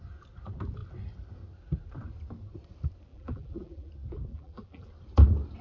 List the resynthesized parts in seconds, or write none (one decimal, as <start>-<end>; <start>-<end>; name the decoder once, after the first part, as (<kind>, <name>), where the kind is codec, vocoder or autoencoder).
3.1-3.9 (vocoder, BigVGAN v2); 4.3-4.9